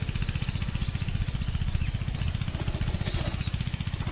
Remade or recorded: recorded